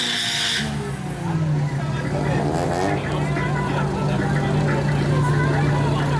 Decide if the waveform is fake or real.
real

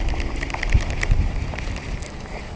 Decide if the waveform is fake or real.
real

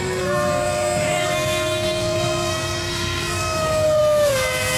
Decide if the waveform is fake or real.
fake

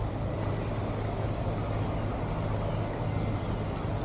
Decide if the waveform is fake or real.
real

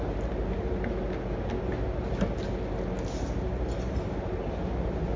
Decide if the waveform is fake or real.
real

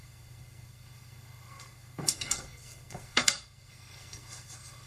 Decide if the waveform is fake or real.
fake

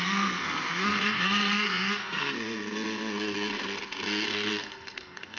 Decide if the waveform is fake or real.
fake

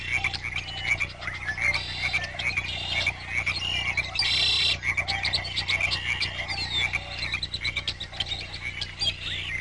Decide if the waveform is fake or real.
real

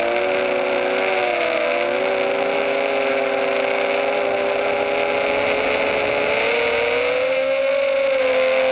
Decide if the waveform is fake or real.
real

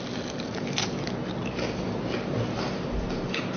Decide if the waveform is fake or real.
real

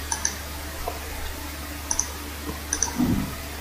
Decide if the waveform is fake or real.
real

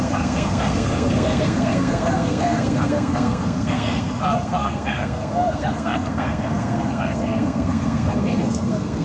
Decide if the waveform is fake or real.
fake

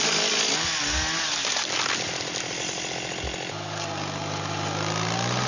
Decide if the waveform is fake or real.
real